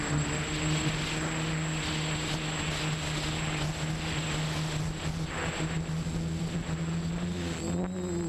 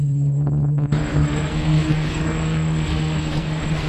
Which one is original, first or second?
first